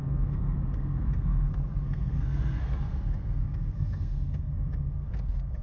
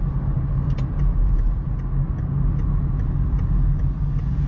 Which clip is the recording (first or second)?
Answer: second